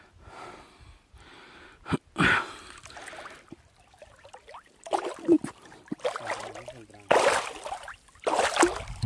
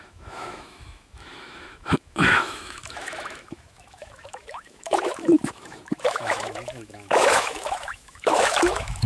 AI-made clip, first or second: second